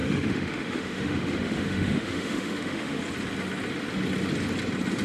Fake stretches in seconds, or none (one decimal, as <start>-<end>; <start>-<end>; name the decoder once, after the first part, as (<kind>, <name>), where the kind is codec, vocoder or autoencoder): 0.0-3.0 (autoencoder, DAC-VAE)